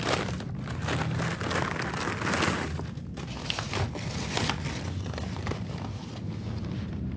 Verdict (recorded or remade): recorded